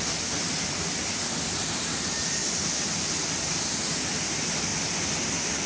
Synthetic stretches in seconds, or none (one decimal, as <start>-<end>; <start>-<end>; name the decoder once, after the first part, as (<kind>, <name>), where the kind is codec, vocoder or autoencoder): none

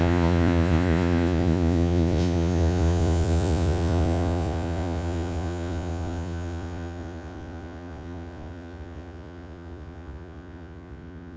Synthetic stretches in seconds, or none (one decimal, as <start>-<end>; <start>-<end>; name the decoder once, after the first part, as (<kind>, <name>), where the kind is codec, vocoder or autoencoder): 0.0-11.4 (vocoder, Vocos)

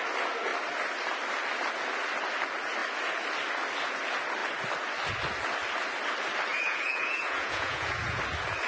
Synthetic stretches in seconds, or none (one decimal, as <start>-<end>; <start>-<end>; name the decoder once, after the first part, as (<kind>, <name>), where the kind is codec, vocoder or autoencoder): 6.5-8.2 (vocoder, Vocos)

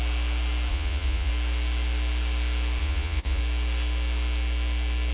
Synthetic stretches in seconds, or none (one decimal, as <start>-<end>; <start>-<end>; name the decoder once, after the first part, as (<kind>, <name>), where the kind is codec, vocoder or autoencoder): 0.7-1.3 (vocoder, Vocos); 2.8-3.4

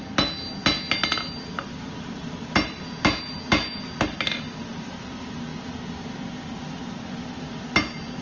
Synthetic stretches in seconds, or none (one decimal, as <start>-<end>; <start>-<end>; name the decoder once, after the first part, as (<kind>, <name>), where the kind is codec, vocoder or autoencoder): none

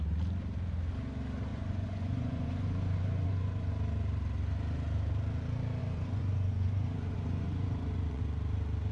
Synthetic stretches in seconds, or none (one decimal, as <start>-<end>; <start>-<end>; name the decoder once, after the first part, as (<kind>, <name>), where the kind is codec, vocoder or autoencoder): 1.5-3.7 (vocoder, Vocos); 5.8-8.2

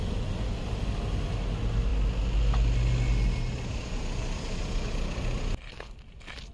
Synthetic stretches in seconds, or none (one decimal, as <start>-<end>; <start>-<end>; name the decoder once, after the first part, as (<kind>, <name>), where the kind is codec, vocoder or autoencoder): none

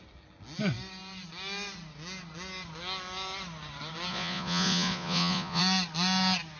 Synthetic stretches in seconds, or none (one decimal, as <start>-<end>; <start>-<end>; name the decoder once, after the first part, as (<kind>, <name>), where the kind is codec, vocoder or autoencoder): 4.1-5.6 (vocoder, Vocos)